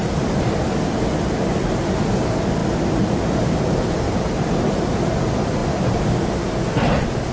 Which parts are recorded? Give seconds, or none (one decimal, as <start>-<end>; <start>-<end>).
0.0-7.3